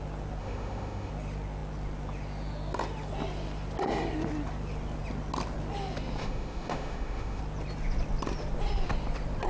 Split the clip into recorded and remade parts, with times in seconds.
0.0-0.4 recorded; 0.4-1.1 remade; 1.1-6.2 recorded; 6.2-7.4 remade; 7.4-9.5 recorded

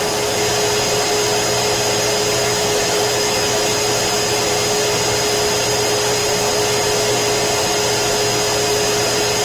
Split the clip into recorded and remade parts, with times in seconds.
0.0-2.4 recorded; 2.4-3.7 remade; 3.7-9.4 recorded

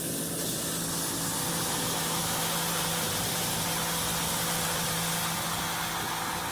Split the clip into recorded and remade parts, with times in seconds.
0.0-1.5 recorded; 1.5-2.4 remade; 2.4-6.5 recorded

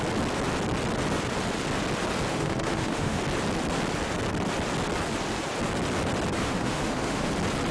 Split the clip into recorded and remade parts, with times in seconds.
0.0-2.3 recorded; 2.3-3.2 remade; 3.2-6.4 recorded; 6.4-7.3 remade; 7.3-7.7 recorded